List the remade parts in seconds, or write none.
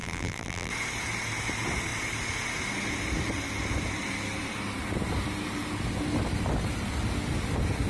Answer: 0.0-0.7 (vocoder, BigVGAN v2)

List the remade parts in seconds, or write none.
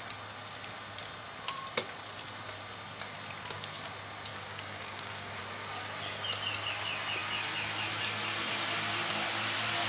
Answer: 4.3-5.4 (codec, DAC)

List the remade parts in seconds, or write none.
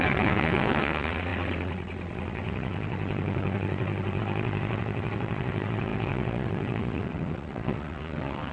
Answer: 0.0-8.5 (vocoder, WaveNeXt)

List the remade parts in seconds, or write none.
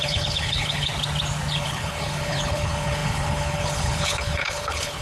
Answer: 0.0-0.9 (codec, HILCodec); 1.5-5.0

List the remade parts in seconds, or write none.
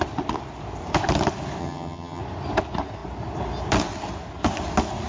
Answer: 1.6-2.2 (vocoder, HiFi-GAN)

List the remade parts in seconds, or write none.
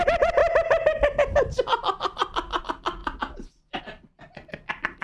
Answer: 0.0-0.4 (vocoder, BigVGAN v2); 2.6-3.0; 3.8-5.0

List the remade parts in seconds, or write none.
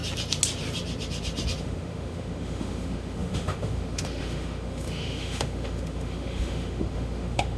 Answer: 1.6-7.6 (autoencoder, DAC-VAE)